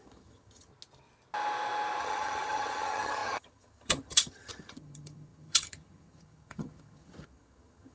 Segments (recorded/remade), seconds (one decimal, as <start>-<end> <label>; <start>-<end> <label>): 0.0-0.7 remade; 0.7-2.0 recorded; 2.0-7.9 remade

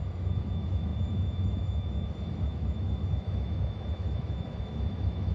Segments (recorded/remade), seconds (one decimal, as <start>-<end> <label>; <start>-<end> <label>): 0.0-5.3 remade